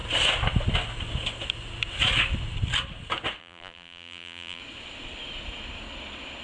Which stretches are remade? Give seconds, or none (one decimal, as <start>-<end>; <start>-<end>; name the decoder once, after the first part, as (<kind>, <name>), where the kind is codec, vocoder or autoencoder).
3.4-4.6 (vocoder, BigVGAN v2)

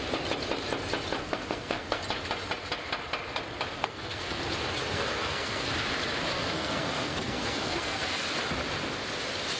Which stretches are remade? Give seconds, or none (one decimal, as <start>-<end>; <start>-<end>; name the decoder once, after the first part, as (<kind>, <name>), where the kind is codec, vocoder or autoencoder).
1.2-2.0 (codec, SNAC); 3.8-4.4; 4.9-5.7; 6.3-8.3

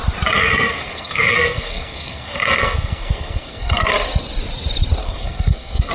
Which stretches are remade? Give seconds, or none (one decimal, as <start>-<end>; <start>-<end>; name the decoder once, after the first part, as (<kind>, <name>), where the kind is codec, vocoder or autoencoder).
0.4-3.9 (codec, SNAC); 5.0-5.9